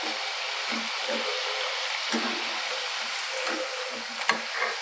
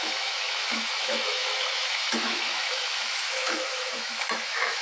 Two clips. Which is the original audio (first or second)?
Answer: first